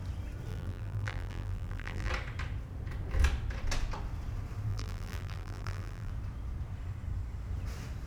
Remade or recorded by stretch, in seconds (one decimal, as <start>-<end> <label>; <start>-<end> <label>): 0.0-0.5 recorded; 0.5-2.1 remade; 2.1-4.7 recorded; 4.7-6.1 remade; 6.1-8.1 recorded